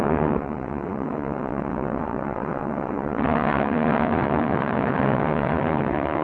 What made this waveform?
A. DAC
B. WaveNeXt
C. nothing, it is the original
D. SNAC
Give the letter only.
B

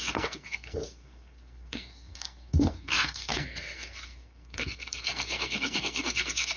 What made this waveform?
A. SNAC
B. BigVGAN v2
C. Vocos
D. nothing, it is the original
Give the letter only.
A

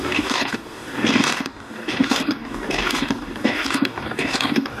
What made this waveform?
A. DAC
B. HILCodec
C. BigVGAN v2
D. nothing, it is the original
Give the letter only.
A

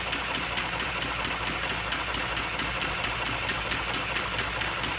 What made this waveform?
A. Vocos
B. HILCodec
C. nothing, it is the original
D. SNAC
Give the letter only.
C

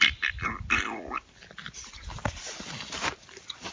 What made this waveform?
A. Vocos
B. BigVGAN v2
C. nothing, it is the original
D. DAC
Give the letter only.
C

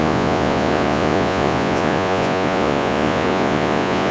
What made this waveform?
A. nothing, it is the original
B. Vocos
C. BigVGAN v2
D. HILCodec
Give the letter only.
B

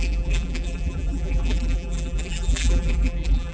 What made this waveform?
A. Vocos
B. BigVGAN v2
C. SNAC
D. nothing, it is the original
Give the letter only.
B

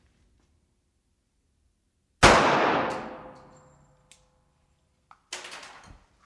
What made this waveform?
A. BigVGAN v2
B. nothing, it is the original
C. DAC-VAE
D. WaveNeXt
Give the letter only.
B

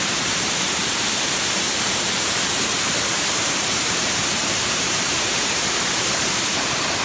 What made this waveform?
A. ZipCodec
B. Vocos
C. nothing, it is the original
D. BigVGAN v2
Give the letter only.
D